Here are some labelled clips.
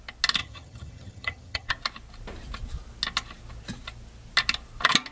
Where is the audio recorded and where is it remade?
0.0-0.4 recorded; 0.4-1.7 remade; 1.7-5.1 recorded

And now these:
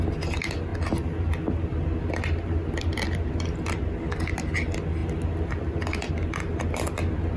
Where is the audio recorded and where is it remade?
0.0-7.4 recorded

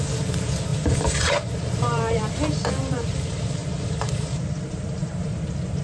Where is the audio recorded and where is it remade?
0.0-5.8 remade

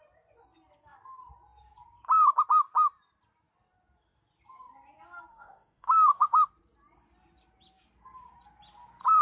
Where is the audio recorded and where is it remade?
0.0-5.3 recorded; 5.3-6.5 remade; 6.5-9.2 recorded

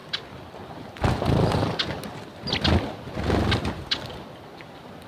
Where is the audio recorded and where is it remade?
0.0-5.1 recorded

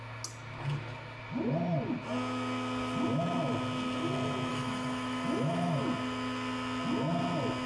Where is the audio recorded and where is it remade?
0.0-4.5 recorded; 4.5-5.8 remade; 5.8-7.7 recorded

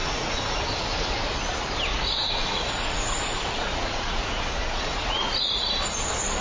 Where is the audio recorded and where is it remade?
0.0-0.6 remade; 0.6-1.9 recorded; 1.9-5.7 remade; 5.7-6.4 recorded

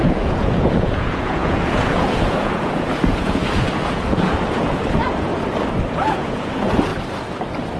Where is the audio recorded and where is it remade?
0.0-5.3 remade; 5.3-5.9 recorded; 5.9-6.9 remade; 6.9-7.8 recorded